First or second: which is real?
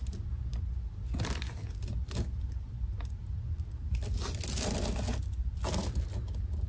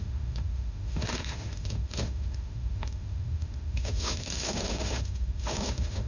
first